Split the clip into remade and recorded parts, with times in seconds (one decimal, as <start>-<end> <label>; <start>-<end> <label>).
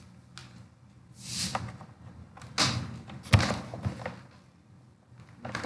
0.0-5.7 recorded